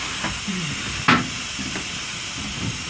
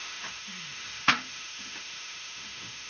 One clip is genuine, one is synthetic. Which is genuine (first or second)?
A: first